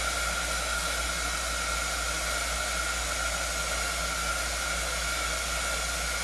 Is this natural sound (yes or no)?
yes